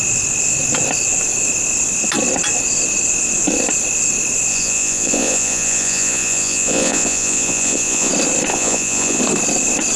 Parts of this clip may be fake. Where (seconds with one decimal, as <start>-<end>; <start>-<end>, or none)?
4.5-8.1; 8.5-9.2